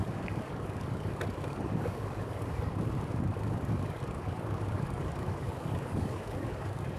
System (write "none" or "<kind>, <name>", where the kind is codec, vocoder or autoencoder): codec, DAC